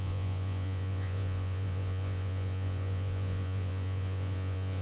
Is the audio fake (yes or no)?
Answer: yes